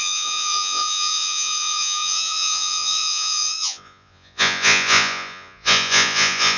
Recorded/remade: remade